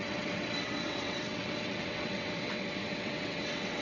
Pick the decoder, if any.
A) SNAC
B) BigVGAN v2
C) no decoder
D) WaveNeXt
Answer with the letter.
D